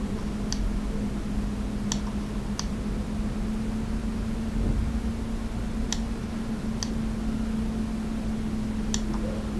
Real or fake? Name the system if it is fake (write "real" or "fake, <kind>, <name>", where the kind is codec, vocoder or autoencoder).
real